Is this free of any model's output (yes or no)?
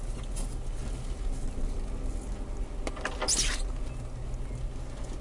yes